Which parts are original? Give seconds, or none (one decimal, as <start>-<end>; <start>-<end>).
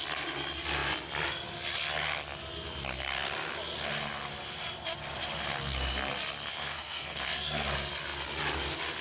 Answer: 0.0-6.5; 7.3-9.0